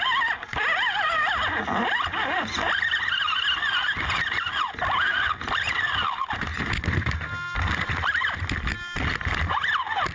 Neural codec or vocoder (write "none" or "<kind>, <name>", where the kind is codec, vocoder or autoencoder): none